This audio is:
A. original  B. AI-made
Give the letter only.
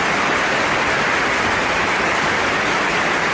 A